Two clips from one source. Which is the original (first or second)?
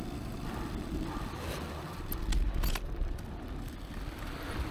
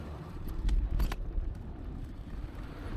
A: first